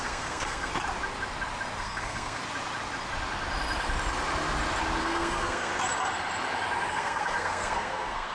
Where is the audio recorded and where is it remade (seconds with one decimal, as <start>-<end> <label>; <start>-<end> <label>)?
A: 0.0-0.7 remade; 0.7-1.8 recorded; 1.8-2.4 remade; 2.4-5.0 recorded; 5.0-5.7 remade; 5.7-6.9 recorded; 6.9-8.3 remade